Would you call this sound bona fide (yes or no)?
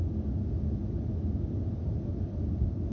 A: yes